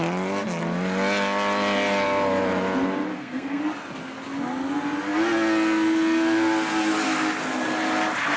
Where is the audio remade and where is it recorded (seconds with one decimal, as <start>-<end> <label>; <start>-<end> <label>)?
0.0-3.1 recorded; 3.1-3.6 remade; 3.6-8.4 recorded